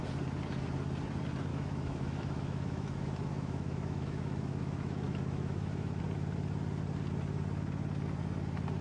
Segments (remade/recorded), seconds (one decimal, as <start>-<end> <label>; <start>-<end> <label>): 0.0-1.5 recorded; 1.5-6.0 remade; 6.0-8.8 recorded

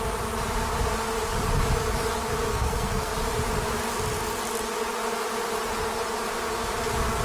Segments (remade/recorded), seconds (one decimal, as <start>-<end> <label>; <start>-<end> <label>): 0.0-2.5 recorded; 2.5-3.1 remade; 3.1-7.2 recorded

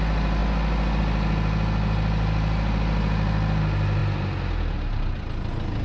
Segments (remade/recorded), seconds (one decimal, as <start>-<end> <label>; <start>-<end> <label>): 0.0-5.8 recorded